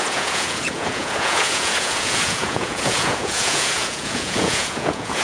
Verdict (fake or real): fake